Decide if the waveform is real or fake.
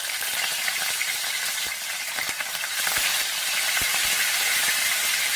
fake